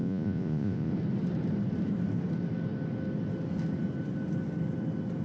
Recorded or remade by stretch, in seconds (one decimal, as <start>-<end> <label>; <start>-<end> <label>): 0.0-0.9 remade; 0.9-5.2 recorded